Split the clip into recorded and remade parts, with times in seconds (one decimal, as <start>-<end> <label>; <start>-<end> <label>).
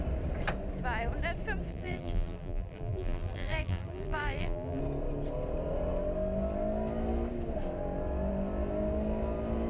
0.0-1.7 recorded; 1.7-4.8 remade; 4.8-9.7 recorded